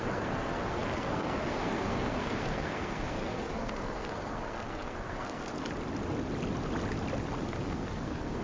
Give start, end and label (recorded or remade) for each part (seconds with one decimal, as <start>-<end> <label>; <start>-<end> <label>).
0.0-5.5 remade; 5.5-7.6 recorded; 7.6-8.4 remade